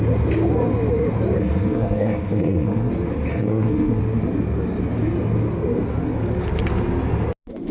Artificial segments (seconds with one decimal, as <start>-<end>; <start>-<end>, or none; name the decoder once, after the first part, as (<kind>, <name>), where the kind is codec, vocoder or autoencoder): 1.4-2.9 (codec, SNAC); 3.3-4.0